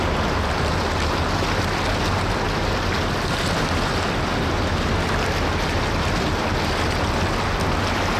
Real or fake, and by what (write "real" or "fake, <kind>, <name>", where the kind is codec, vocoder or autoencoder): real